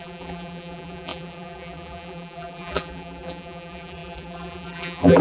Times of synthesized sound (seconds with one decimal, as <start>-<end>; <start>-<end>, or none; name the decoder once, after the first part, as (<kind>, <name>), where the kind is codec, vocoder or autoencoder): 0.0-5.2 (vocoder, BigVGAN v2)